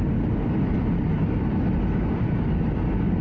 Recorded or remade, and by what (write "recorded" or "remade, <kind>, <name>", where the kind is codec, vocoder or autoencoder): recorded